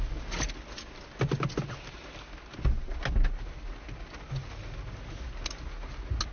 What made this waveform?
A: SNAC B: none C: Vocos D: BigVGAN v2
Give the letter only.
B